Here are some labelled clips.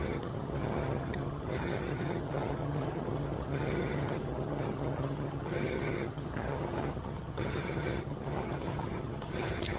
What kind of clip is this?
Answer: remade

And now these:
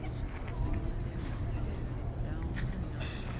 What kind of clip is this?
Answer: recorded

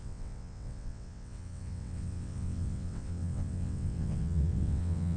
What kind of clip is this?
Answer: remade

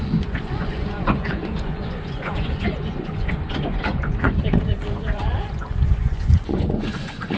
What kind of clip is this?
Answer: remade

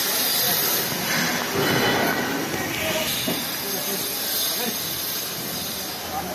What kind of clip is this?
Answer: recorded